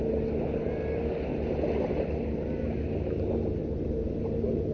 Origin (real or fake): real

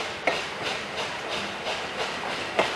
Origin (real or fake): real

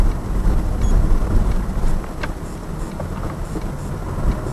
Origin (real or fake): real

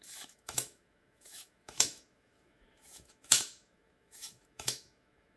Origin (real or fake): fake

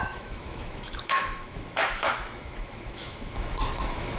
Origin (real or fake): fake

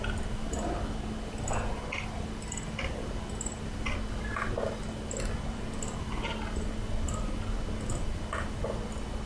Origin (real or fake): real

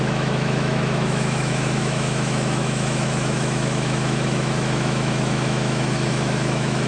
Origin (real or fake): fake